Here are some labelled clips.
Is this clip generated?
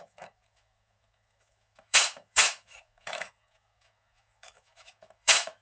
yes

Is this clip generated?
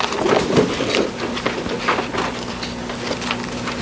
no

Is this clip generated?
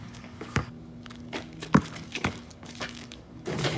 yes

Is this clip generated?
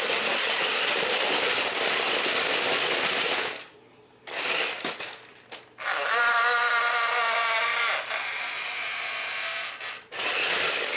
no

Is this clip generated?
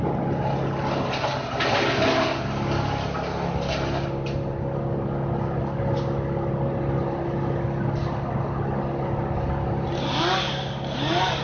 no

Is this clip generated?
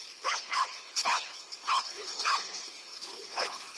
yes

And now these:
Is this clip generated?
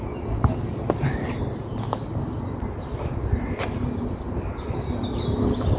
no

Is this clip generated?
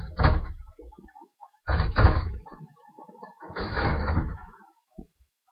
yes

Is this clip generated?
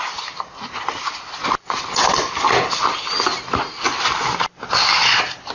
no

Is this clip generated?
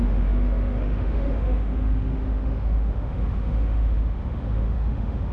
yes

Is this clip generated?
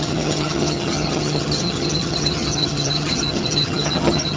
yes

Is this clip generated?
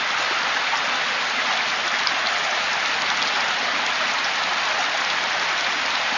no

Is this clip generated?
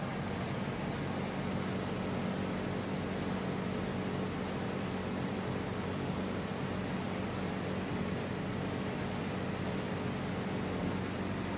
no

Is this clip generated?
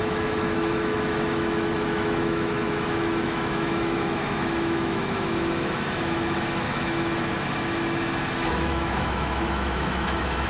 yes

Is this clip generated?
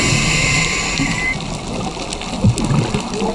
no